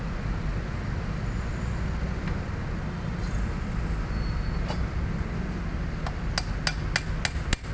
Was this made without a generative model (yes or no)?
yes